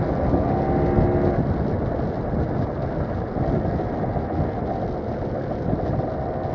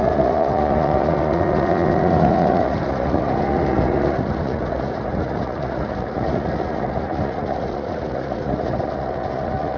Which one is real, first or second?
first